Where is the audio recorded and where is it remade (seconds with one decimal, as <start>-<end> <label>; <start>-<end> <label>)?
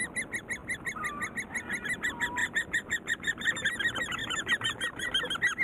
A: 0.0-2.4 recorded; 2.4-3.8 remade; 3.8-4.2 recorded; 4.2-5.1 remade; 5.1-5.6 recorded